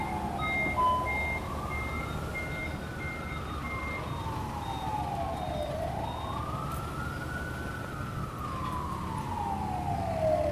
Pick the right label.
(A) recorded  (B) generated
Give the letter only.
A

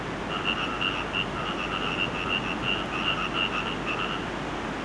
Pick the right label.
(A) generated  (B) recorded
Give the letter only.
B